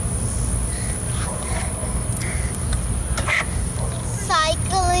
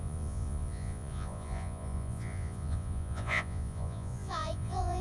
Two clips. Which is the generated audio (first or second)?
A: second